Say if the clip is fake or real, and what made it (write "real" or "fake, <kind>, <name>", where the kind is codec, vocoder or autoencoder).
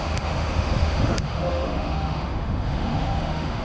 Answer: fake, autoencoder, DAC-VAE